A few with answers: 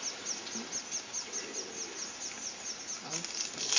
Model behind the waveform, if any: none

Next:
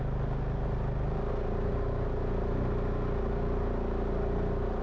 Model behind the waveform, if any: none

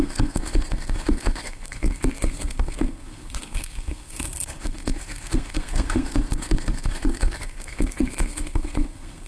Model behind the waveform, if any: codec, SNAC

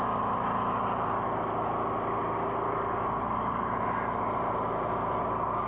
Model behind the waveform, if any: none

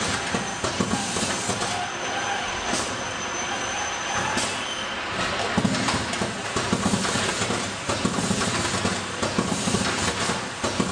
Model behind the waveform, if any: none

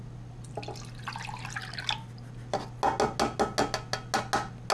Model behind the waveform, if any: none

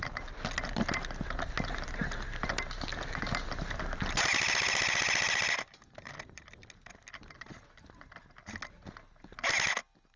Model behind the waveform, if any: none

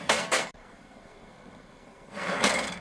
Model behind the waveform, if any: codec, SNAC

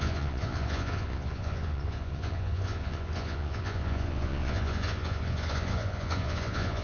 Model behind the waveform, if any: vocoder, Vocos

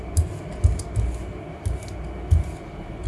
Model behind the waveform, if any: none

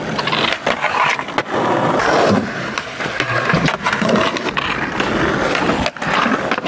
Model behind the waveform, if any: none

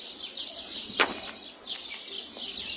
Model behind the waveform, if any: none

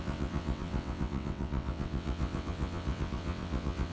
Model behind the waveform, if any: vocoder, WaveNeXt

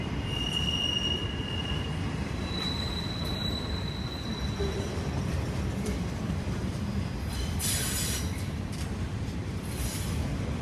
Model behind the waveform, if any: vocoder, BigVGAN v2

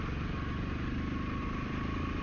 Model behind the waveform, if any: none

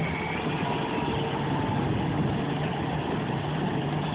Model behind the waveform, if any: none